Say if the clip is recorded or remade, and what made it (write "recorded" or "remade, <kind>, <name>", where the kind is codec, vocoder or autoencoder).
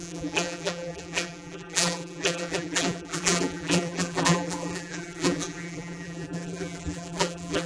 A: remade, vocoder, BigVGAN v2